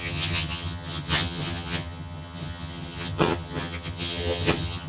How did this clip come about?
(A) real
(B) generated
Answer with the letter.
B